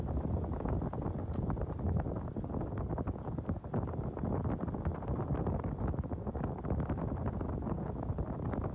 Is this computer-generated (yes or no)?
no